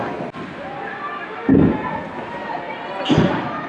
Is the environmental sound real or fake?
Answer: real